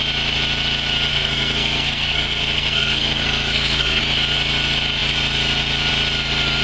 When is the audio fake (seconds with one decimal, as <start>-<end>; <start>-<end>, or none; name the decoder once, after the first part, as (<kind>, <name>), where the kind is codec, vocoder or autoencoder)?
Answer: 1.1-4.0 (codec, SNAC)